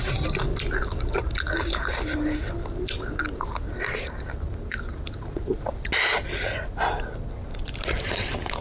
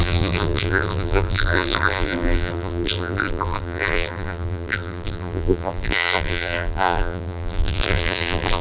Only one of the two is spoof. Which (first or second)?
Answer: second